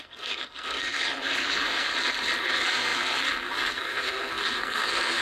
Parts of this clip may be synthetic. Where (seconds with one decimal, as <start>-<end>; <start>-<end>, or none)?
0.0-1.9; 2.4-5.2